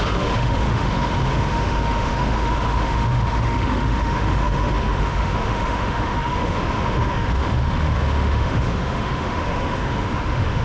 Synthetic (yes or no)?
yes